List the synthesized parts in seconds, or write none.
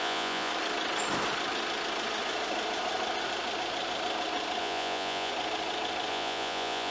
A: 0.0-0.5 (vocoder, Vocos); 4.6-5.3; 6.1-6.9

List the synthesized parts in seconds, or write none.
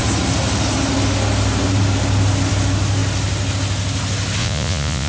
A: 4.4-5.1 (vocoder, Vocos)